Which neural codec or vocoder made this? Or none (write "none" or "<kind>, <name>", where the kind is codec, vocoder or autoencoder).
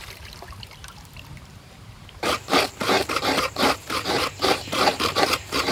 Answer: vocoder, BigVGAN v2